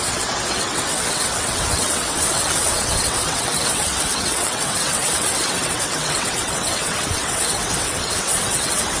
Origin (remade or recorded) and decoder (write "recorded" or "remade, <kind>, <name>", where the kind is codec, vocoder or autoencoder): remade, vocoder, WaveNeXt